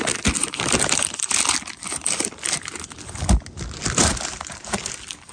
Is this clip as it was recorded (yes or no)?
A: yes